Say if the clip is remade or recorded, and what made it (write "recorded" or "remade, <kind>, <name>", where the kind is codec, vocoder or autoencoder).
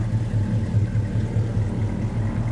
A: recorded